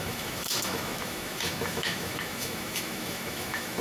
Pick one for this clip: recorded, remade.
remade